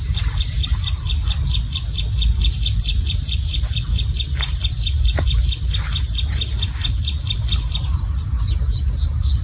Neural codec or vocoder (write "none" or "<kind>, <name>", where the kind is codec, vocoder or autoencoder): none